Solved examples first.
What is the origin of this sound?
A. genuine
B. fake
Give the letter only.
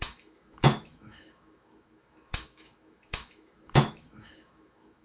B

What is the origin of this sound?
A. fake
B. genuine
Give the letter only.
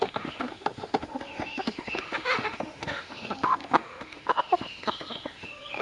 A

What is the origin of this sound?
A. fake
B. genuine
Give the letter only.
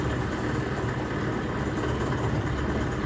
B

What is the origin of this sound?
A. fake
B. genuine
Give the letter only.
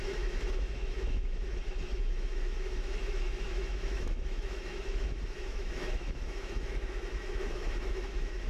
A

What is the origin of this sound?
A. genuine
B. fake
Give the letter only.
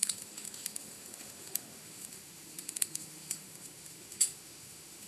B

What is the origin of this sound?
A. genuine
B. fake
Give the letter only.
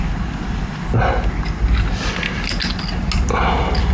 A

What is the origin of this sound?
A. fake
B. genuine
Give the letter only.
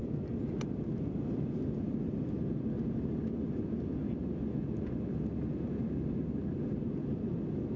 B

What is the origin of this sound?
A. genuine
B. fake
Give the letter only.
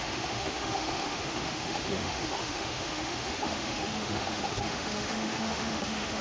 B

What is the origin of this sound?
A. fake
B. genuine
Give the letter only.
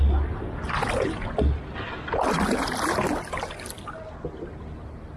B